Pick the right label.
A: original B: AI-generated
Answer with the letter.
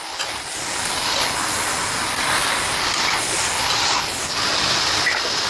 A